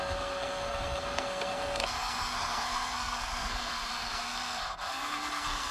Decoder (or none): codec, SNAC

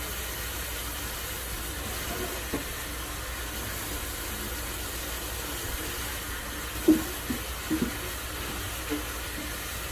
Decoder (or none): none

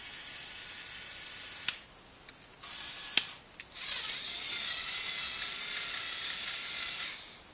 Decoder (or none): none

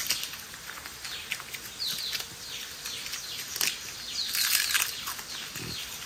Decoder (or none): none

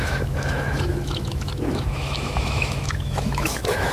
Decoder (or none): autoencoder, DAC-VAE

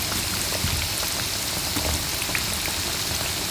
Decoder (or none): none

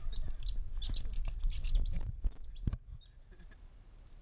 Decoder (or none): none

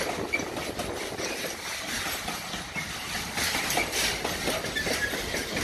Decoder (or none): none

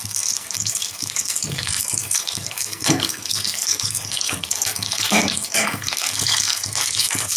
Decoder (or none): codec, SNAC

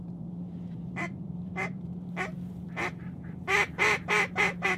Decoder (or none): vocoder, BigVGAN v2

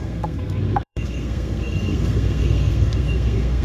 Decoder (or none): codec, SNAC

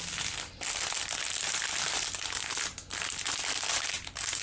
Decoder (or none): none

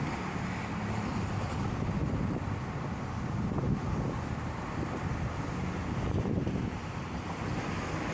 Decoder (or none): none